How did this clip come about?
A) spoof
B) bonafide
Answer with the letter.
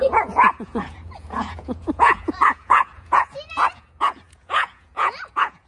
A